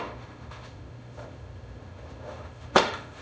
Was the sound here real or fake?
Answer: fake